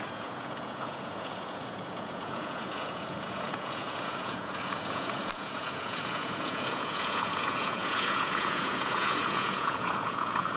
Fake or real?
fake